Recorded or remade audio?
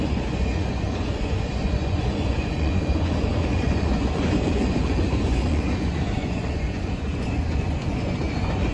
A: remade